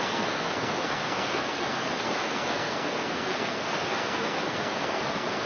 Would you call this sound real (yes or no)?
no